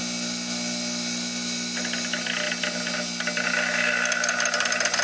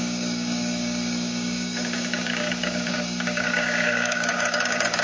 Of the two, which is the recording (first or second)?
first